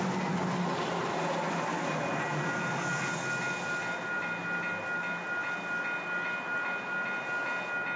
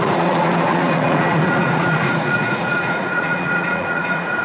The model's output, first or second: second